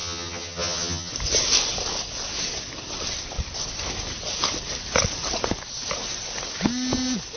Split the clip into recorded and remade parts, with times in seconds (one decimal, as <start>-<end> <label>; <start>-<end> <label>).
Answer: 0.0-1.1 remade; 1.1-7.4 recorded